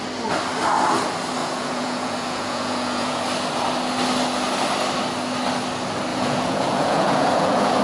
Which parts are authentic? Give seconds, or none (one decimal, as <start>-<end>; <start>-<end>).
0.0-1.4; 3.2-6.1